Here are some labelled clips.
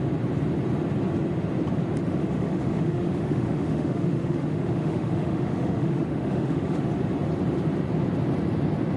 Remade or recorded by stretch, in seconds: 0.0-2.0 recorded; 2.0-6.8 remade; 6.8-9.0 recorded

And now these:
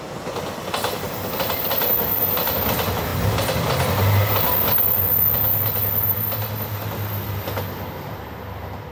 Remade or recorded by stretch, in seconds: 0.0-8.9 recorded

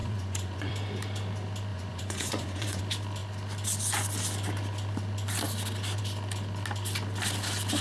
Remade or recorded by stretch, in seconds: 0.0-0.7 remade; 0.7-1.7 recorded; 1.7-2.8 remade; 2.8-7.8 recorded

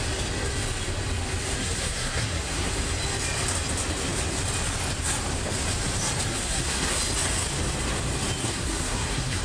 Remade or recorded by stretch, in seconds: 0.0-1.6 recorded; 1.6-2.7 remade; 2.7-6.3 recorded; 6.3-7.0 remade; 7.0-8.4 recorded; 8.4-9.4 remade